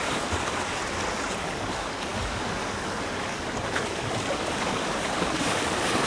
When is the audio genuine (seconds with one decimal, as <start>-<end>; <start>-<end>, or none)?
0.8-1.4